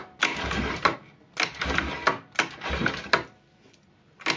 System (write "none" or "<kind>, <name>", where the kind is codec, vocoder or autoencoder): none